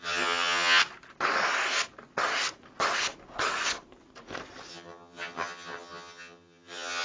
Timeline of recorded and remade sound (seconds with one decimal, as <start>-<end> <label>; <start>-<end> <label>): 0.0-0.8 remade; 0.8-4.7 recorded; 4.7-7.0 remade